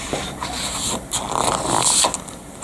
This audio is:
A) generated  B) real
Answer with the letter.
B